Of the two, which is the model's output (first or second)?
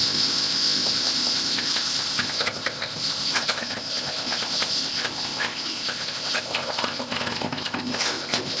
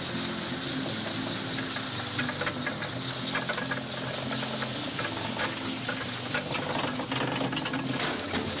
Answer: first